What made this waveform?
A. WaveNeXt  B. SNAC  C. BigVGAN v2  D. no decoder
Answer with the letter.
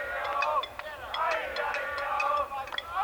C